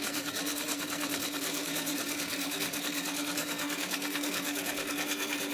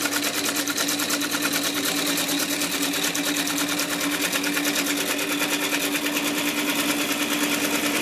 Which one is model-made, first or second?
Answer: first